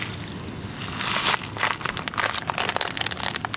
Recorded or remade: recorded